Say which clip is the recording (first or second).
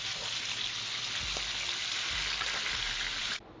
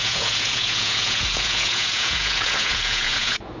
first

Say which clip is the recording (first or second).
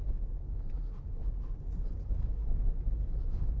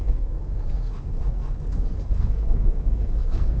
first